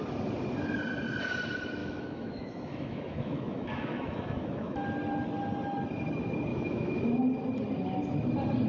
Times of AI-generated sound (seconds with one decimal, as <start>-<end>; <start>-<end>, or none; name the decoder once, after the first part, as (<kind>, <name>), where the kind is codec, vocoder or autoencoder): 1.8-4.8 (autoencoder, DAC-VAE); 6.5-7.0